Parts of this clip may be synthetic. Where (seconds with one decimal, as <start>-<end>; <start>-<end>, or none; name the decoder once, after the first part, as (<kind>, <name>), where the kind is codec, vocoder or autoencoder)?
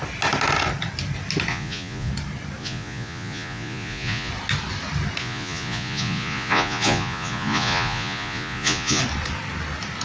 1.5-2.1 (vocoder, Vocos); 2.6-4.3; 5.2-9.0